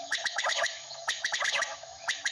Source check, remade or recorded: remade